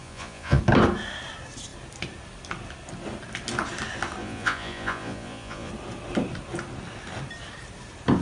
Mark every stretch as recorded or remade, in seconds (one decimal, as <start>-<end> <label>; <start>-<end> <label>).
0.0-0.6 remade; 0.6-4.2 recorded; 4.2-5.7 remade; 5.7-8.2 recorded